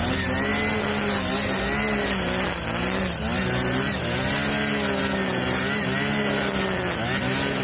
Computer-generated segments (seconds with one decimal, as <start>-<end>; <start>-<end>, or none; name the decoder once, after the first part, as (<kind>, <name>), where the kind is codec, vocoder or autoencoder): none